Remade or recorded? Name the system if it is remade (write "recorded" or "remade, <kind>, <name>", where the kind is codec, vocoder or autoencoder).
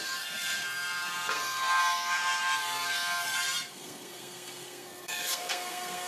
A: remade, codec, SNAC